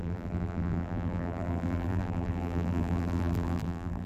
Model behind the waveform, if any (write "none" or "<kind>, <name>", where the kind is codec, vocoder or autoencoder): vocoder, BigVGAN v2